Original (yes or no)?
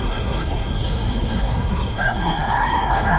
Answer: no